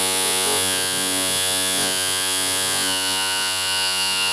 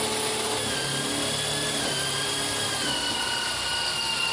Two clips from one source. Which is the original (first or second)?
second